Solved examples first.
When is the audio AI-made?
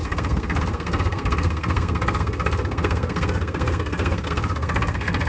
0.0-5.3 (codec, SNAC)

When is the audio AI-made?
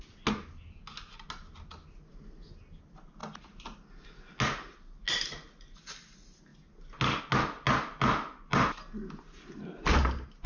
none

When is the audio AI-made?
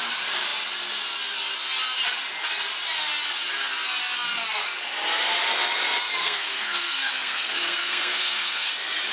6.2-8.7 (codec, SNAC)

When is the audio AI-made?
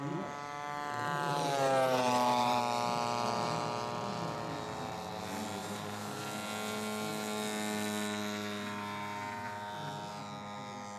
1.3-2.6 (vocoder, BigVGAN v2); 5.6-6.2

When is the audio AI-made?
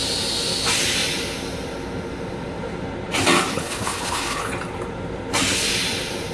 3.5-4.5 (codec, HILCodec)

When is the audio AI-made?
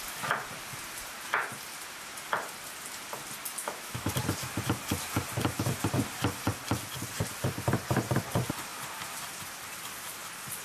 3.6-4.1 (autoencoder, DAC-VAE)